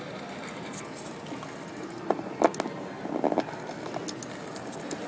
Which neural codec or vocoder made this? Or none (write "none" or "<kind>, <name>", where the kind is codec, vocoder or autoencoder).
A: none